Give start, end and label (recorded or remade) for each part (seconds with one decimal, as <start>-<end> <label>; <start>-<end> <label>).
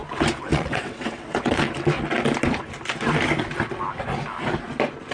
0.0-0.5 recorded; 0.5-1.7 remade; 1.7-5.1 recorded